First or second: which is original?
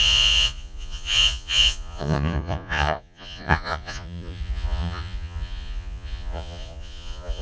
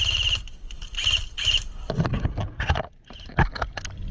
second